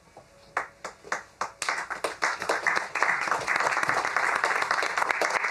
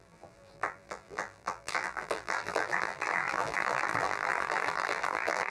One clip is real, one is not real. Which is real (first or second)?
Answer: first